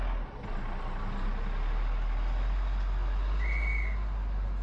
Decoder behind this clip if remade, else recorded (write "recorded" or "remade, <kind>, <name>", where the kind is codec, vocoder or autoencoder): recorded